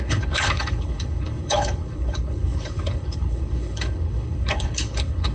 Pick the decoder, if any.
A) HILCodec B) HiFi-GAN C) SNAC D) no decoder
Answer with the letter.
A